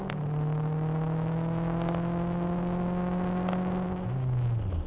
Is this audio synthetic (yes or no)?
no